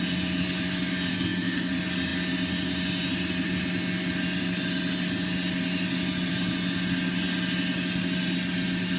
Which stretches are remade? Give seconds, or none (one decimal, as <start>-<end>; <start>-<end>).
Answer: 1.1-1.7